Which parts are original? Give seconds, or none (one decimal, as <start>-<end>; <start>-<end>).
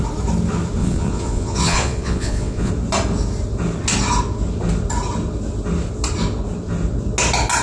0.0-0.8; 2.7-7.6